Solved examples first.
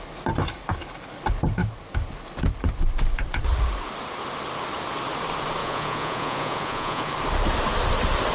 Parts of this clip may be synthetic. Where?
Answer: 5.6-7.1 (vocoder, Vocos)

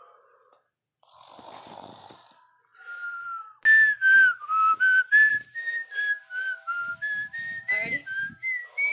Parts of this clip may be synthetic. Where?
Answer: 5.3-6.0 (vocoder, BigVGAN v2)

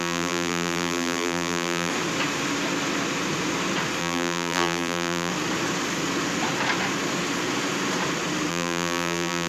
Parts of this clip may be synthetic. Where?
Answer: 0.0-1.9 (vocoder, BigVGAN v2); 4.0-5.3; 8.5-9.5

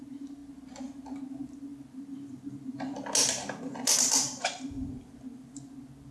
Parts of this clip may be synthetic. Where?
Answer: none